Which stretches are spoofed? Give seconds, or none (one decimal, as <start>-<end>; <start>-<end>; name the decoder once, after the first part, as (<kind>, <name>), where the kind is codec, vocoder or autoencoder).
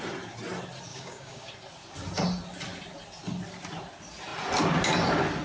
0.9-1.5 (codec, DAC)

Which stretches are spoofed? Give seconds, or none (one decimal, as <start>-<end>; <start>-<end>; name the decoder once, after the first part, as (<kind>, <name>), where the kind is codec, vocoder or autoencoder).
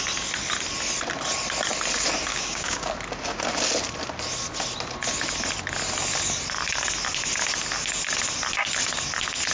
2.3-2.9 (codec, DAC)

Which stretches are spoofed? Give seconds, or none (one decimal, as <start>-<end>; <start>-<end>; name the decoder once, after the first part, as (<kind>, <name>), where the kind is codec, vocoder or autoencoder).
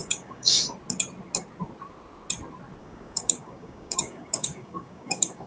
0.0-0.6 (codec, DAC); 2.8-5.5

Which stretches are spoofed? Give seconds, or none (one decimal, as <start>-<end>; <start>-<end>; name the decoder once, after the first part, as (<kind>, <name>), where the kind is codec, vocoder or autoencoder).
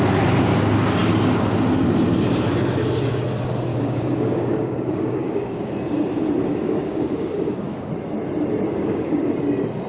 3.7-5.7 (codec, DAC); 6.5-7.9; 8.7-9.3